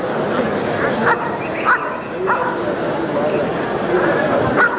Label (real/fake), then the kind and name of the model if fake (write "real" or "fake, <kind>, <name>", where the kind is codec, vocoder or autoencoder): real